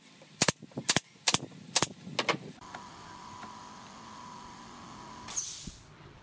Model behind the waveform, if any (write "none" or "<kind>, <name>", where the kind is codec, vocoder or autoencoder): none